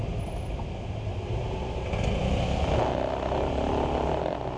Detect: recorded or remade recorded